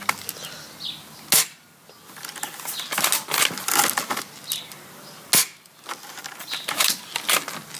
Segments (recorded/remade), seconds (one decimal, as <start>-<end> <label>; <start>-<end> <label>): 0.0-6.2 recorded; 6.2-7.1 remade; 7.1-7.8 recorded